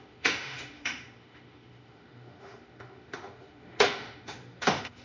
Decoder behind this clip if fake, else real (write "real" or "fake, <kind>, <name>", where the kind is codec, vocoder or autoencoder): fake, autoencoder, DAC-VAE